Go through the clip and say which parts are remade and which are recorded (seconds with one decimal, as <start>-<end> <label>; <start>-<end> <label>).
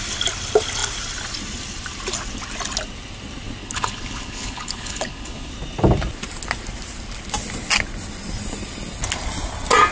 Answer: 0.0-3.6 recorded; 3.6-5.5 remade; 5.5-9.9 recorded